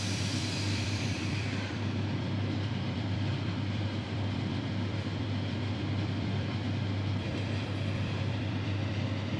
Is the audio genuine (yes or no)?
no